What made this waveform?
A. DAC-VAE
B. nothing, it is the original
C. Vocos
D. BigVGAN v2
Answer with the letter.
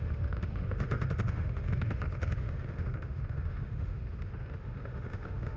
A